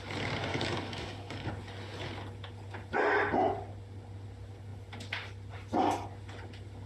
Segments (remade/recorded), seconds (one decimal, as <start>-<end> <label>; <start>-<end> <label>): 0.0-0.5 recorded; 0.5-1.5 remade; 1.5-6.9 recorded